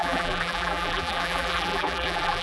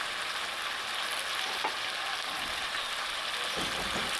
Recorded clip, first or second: second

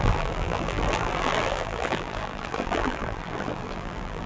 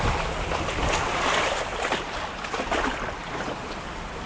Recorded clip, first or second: second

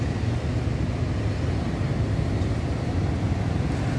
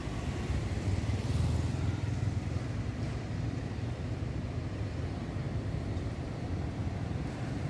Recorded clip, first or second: first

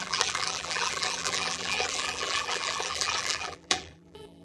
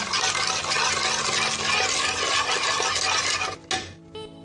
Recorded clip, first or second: second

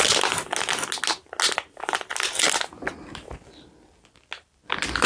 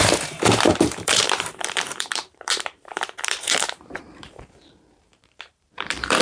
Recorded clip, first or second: first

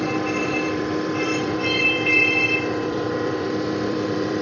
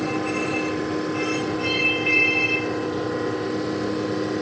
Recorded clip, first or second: second